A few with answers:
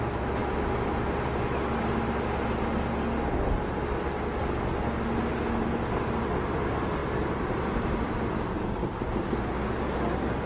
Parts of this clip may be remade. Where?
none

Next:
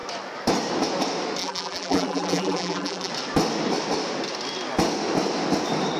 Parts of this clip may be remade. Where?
1.4-3.1